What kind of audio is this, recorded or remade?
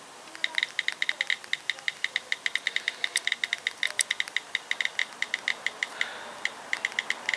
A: recorded